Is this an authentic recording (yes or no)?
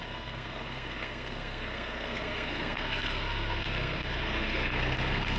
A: no